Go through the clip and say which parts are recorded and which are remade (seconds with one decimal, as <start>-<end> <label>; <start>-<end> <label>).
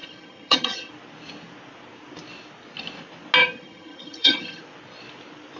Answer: 0.0-0.9 remade; 0.9-3.4 recorded; 3.4-4.6 remade; 4.6-5.6 recorded